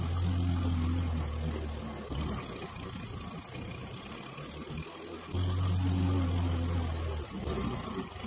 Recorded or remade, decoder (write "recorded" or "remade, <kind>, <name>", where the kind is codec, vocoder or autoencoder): recorded